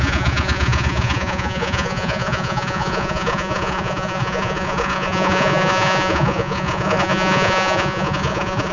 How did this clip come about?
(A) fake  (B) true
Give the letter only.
A